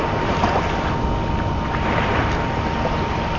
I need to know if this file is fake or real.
real